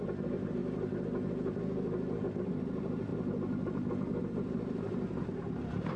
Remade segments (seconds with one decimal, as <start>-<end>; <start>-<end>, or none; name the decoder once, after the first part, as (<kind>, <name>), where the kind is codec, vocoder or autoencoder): 0.0-0.6 (vocoder, BigVGAN v2); 2.4-3.1; 4.2-6.0